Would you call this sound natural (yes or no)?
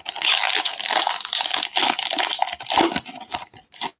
yes